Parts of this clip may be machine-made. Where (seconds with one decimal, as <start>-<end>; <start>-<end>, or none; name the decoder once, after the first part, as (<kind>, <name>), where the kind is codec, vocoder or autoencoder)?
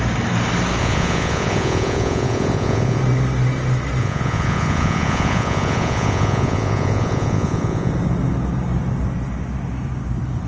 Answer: 0.8-3.0 (vocoder, Vocos); 4.0-7.9